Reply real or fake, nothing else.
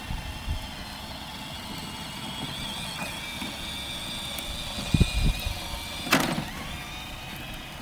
real